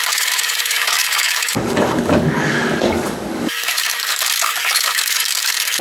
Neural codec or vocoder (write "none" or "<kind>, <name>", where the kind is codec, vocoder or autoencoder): codec, DAC